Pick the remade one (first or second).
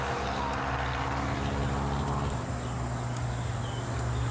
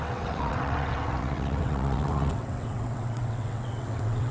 second